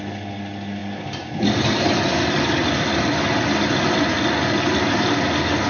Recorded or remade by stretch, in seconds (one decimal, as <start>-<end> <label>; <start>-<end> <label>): 0.0-0.8 recorded; 0.8-3.0 remade; 3.0-5.7 recorded